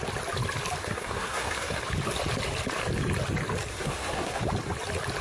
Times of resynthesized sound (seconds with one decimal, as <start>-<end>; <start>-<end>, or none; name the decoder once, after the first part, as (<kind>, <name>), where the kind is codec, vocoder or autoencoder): 0.8-1.8 (codec, SNAC); 3.7-4.4